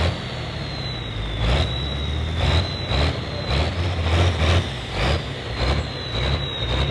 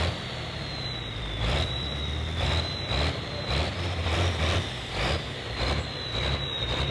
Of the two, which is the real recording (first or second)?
first